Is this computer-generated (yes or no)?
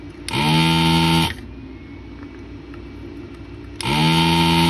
no